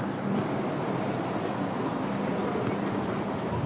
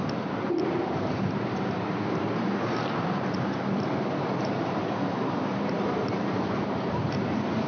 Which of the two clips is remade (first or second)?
second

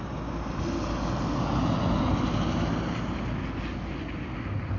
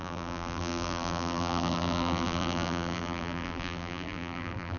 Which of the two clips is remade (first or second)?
second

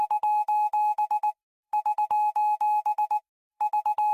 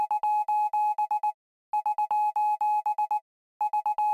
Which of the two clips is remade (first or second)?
first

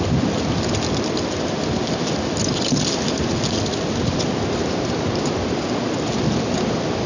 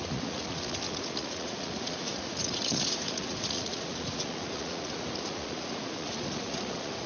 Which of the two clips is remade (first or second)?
second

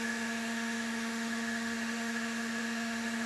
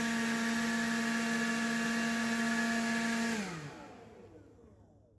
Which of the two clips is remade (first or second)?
first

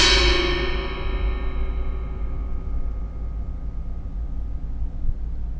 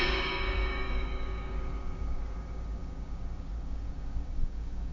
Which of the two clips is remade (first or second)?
second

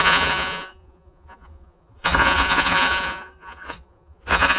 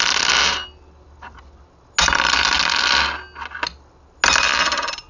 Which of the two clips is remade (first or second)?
first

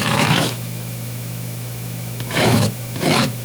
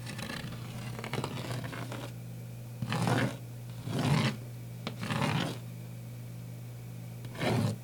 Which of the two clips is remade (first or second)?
first